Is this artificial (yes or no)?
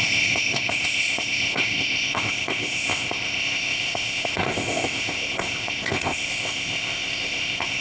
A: yes